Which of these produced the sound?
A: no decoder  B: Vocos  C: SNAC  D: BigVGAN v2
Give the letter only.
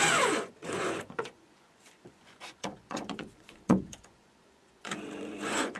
B